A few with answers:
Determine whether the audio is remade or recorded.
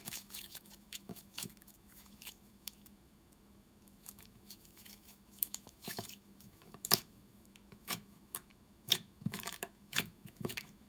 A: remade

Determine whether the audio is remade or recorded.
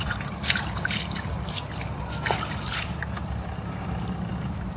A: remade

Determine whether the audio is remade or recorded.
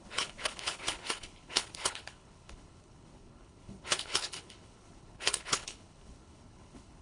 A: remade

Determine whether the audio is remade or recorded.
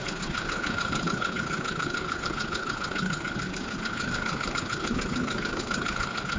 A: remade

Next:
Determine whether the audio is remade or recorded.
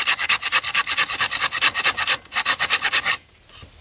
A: recorded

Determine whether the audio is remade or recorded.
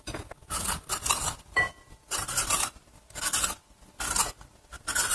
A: recorded